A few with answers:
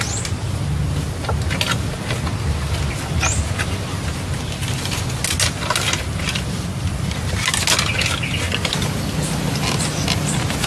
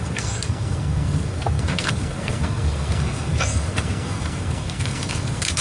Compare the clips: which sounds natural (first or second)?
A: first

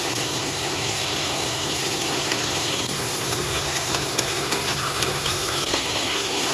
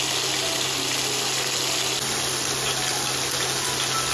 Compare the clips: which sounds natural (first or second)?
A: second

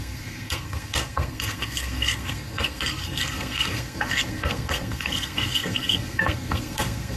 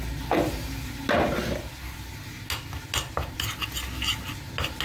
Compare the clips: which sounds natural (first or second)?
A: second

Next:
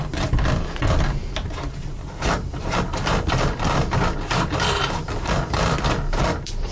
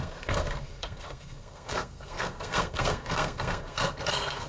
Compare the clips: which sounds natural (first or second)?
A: first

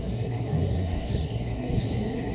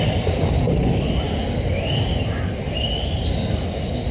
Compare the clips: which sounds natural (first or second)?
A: second